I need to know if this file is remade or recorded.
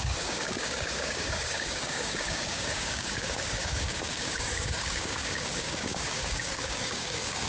remade